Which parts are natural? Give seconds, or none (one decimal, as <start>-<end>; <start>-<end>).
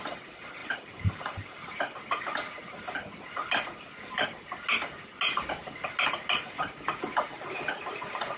0.0-0.6; 1.2-8.4